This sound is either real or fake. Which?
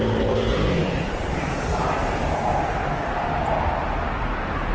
real